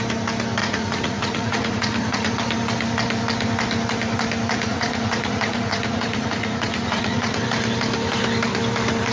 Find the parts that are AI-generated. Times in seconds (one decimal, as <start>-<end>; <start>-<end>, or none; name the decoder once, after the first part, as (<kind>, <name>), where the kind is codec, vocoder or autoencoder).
0.6-2.3 (vocoder, Vocos); 4.7-7.4